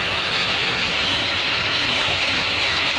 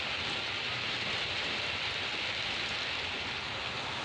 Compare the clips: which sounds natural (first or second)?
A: second